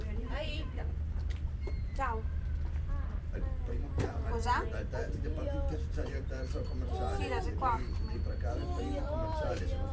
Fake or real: fake